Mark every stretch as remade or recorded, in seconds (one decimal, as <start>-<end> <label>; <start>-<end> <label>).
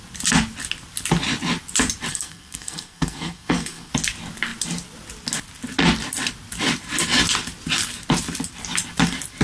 0.0-2.1 recorded; 2.1-3.9 remade; 3.9-9.4 recorded